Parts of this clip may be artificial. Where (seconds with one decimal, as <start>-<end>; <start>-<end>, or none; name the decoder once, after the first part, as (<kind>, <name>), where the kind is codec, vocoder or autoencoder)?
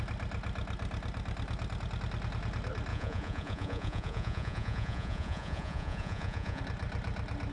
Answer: 2.9-6.6 (vocoder, Vocos)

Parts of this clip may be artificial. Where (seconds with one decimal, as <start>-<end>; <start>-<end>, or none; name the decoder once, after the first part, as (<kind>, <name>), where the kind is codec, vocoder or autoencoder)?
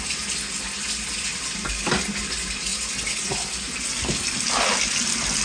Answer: none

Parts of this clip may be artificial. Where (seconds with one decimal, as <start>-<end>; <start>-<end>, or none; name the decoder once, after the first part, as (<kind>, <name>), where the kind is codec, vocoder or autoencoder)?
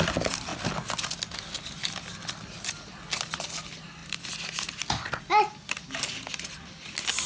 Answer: none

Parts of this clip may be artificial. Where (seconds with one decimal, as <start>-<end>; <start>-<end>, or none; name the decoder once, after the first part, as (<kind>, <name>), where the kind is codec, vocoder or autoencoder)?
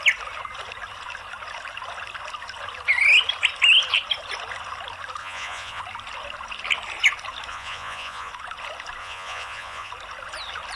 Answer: 5.2-5.8 (vocoder, Vocos); 7.5-8.3; 9.0-9.9